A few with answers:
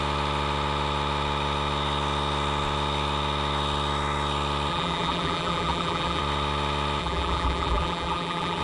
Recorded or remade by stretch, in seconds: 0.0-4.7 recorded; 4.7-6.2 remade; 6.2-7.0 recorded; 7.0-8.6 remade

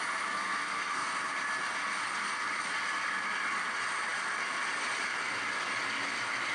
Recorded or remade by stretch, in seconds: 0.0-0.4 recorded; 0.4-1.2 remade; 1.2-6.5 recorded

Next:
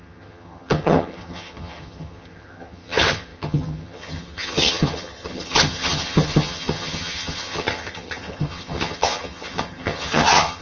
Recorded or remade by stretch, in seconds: 0.0-10.6 remade

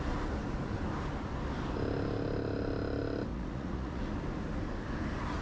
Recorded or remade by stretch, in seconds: 0.0-3.3 recorded; 3.3-4.0 remade; 4.0-5.4 recorded

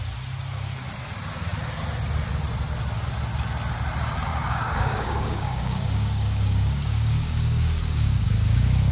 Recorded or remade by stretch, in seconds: 0.0-4.3 recorded; 4.3-8.9 remade

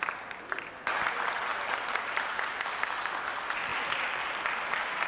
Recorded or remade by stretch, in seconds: 0.0-1.5 recorded; 1.5-2.4 remade; 2.4-3.7 recorded; 3.7-4.2 remade; 4.2-5.1 recorded